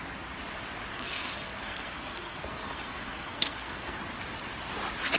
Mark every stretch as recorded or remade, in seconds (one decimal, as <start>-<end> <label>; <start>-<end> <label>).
0.0-0.9 recorded; 0.9-4.0 remade; 4.0-5.2 recorded